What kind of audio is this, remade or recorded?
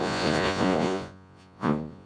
remade